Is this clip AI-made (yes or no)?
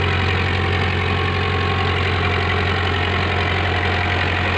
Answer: no